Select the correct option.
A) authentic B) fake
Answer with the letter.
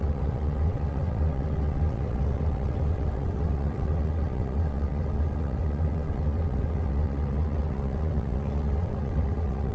B